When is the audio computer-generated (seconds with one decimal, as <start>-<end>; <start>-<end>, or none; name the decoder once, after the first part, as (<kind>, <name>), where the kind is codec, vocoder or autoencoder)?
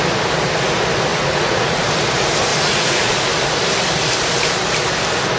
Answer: 1.1-1.8 (vocoder, Vocos); 2.5-3.1